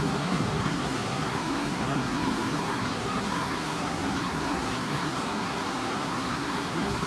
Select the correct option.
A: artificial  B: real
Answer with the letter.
A